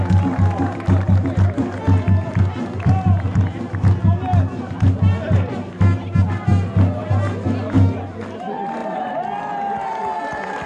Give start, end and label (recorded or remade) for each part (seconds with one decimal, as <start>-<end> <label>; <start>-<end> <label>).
0.0-8.8 recorded; 8.8-9.5 remade; 9.5-10.7 recorded